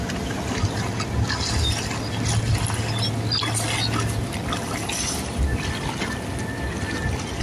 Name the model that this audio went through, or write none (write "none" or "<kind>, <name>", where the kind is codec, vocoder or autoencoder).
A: none